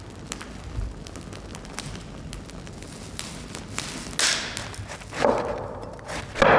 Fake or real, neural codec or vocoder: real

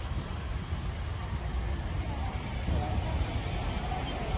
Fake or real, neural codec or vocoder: real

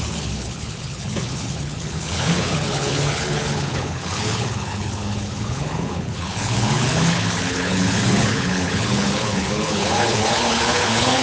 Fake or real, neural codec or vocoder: fake, codec, HILCodec